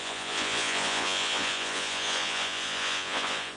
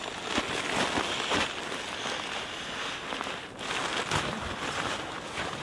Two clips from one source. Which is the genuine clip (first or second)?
second